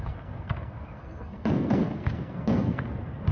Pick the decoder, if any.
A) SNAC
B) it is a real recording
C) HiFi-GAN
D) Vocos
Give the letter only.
A